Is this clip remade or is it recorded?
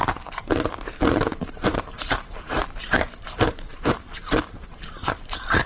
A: remade